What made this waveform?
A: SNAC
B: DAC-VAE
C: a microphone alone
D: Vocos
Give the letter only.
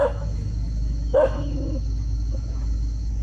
B